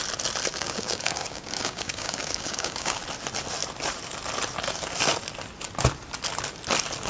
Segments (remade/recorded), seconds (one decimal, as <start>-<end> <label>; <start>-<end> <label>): 0.0-0.5 recorded; 0.5-3.0 remade; 3.0-7.1 recorded